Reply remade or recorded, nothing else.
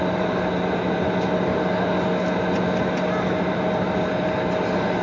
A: recorded